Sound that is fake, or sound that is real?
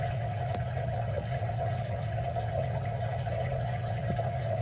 fake